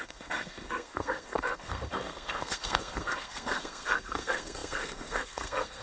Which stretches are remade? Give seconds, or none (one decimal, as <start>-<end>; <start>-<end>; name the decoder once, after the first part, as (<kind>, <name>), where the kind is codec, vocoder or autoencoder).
0.0-5.8 (codec, SNAC)